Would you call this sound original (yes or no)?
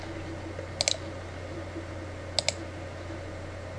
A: yes